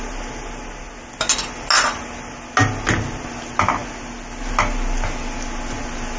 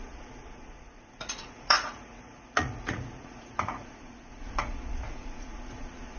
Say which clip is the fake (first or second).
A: second